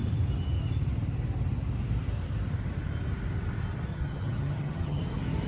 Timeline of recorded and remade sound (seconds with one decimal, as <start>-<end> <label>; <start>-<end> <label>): 0.0-3.9 recorded; 3.9-5.0 remade; 5.0-5.5 recorded